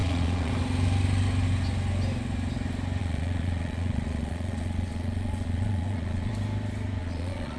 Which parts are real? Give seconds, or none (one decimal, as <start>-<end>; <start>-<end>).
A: 0.5-3.0; 6.3-7.0